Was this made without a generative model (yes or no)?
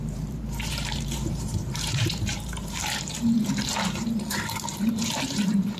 no